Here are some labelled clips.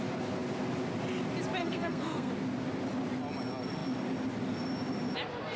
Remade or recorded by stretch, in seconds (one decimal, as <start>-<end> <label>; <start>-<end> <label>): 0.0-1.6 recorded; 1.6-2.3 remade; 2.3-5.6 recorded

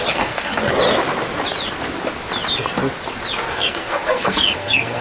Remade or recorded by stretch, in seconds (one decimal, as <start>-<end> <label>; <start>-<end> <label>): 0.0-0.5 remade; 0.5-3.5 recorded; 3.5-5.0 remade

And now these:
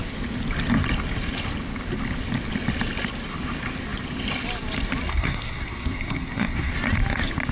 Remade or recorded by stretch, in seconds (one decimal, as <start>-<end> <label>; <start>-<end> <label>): 0.0-5.1 recorded; 5.1-6.7 remade; 6.7-7.5 recorded